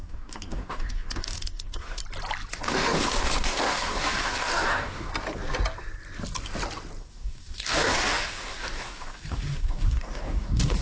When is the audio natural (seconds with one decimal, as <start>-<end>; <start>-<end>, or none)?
2.0-2.5; 5.1-7.0